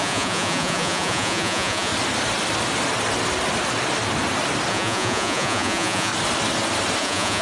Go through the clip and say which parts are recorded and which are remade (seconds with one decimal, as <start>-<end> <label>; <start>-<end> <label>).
0.0-1.9 remade; 1.9-4.7 recorded; 4.7-6.1 remade; 6.1-7.0 recorded; 7.0-7.4 remade